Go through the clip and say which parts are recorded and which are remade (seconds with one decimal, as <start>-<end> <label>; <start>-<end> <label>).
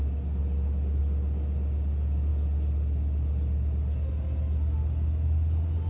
0.0-5.9 recorded